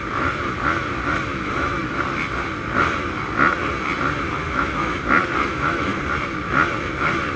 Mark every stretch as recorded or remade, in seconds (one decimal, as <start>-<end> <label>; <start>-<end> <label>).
0.0-1.3 recorded; 1.3-2.0 remade; 2.0-4.4 recorded; 4.4-5.0 remade; 5.0-5.5 recorded; 5.5-6.0 remade; 6.0-7.4 recorded